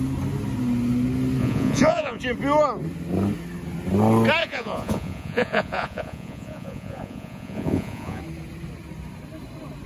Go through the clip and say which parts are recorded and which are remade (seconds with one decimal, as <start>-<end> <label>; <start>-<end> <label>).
0.0-1.4 recorded; 1.4-2.2 remade; 2.2-4.4 recorded; 4.4-8.2 remade; 8.2-9.9 recorded